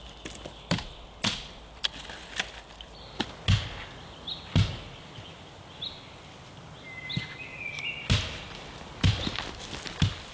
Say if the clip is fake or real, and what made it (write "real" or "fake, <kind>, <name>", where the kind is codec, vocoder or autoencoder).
real